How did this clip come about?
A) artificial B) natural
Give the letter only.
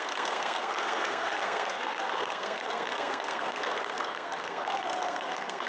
A